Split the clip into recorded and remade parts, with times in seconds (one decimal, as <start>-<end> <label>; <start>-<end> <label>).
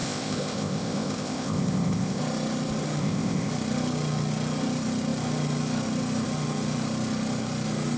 0.0-2.2 remade; 2.2-3.0 recorded; 3.0-3.5 remade; 3.5-8.0 recorded